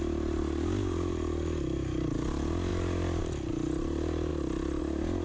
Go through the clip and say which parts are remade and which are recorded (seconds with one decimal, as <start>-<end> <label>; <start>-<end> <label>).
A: 0.0-5.2 recorded